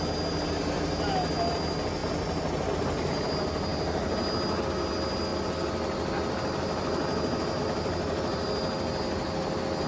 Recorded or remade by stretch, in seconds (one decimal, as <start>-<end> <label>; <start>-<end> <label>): 0.0-9.9 recorded